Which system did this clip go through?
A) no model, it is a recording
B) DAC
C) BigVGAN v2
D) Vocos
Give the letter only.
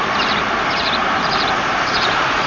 C